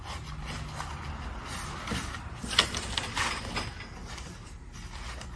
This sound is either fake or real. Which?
real